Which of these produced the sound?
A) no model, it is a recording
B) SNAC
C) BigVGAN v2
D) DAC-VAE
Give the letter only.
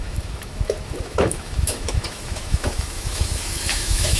D